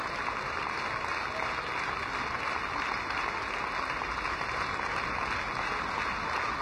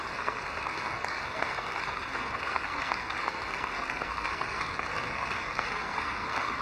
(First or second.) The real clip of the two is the first